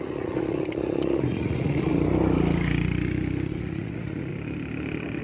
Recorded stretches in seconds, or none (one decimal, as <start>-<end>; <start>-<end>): 1.9-3.5; 4.3-5.2